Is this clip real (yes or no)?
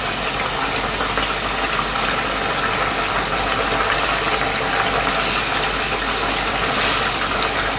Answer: yes